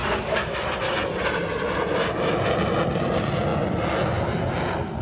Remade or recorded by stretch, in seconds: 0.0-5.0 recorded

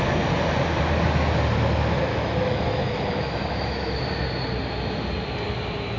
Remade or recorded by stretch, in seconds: 0.0-2.1 recorded; 2.1-4.0 remade; 4.0-6.0 recorded

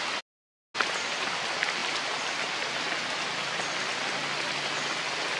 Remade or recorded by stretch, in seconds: 0.0-5.4 recorded

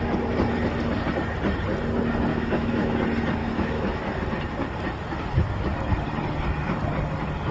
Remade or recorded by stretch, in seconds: 0.0-2.3 recorded; 2.3-3.0 remade; 3.0-3.4 recorded; 3.4-4.0 remade; 4.0-7.5 recorded